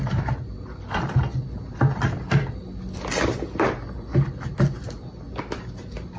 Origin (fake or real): real